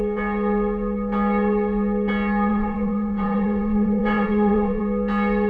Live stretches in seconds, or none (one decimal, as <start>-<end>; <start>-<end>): 0.0-2.5; 4.8-5.5

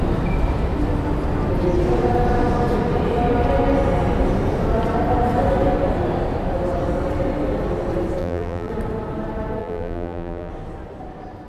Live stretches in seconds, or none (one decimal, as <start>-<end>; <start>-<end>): 0.0-8.2; 8.7-9.6; 10.5-11.5

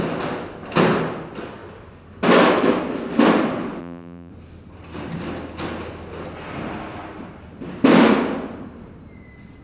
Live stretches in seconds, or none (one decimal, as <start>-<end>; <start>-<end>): 0.0-3.8; 4.3-9.6

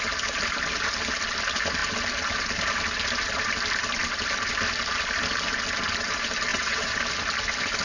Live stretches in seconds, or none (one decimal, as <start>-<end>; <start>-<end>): 0.0-6.5; 7.0-7.8

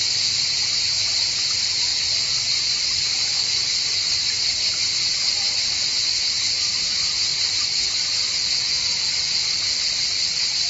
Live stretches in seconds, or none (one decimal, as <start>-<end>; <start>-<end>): 0.0-1.9; 5.8-10.7

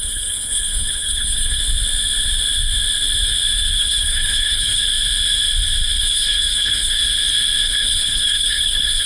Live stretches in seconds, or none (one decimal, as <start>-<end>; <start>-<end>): 1.6-3.8; 4.9-6.0; 7.0-7.6

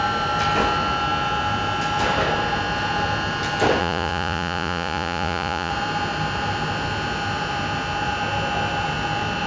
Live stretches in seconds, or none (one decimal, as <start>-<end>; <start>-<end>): 0.0-3.8; 5.7-9.5

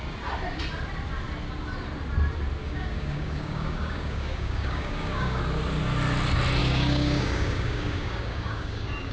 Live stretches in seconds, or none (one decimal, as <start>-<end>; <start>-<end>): 0.0-2.6; 5.4-6.6